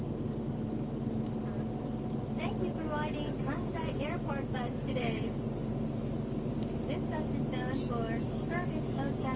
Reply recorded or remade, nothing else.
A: recorded